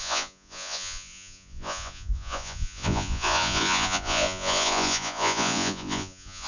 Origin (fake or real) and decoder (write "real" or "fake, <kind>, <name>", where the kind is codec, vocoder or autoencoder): fake, vocoder, Vocos